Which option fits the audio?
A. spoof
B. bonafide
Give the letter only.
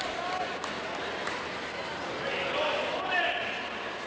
B